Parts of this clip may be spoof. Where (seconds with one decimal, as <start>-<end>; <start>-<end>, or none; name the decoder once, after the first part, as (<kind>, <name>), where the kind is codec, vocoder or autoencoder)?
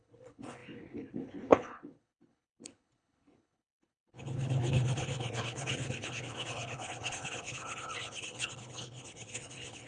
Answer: 0.0-9.9 (codec, HILCodec)